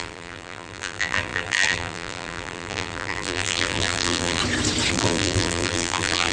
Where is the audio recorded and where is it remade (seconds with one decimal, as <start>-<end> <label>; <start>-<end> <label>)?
0.0-4.4 remade; 4.4-4.9 recorded; 4.9-6.3 remade